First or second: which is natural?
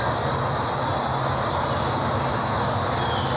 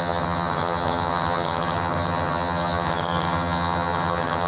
first